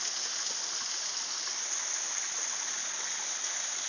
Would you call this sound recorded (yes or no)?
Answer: yes